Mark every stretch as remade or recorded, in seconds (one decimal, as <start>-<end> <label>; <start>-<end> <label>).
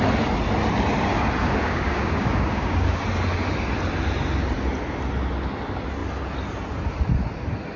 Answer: 0.0-1.4 recorded; 1.4-3.0 remade; 3.0-7.8 recorded